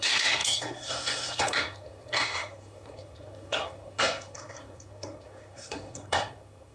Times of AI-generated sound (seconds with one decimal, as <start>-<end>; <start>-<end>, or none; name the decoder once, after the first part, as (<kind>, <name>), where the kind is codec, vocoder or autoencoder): 0.0-6.7 (codec, SNAC)